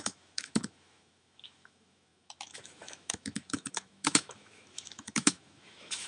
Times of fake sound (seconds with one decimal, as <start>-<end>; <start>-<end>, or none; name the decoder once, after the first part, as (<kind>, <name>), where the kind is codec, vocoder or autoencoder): 0.0-6.1 (autoencoder, DAC-VAE)